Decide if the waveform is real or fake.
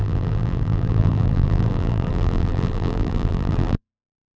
fake